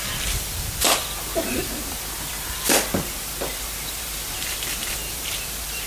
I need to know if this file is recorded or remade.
remade